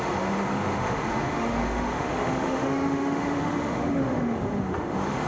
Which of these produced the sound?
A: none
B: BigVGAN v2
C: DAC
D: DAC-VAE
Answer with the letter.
D